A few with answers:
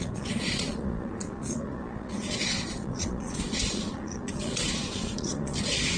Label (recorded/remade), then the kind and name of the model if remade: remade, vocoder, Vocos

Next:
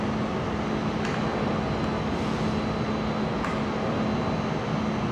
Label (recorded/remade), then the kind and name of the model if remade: recorded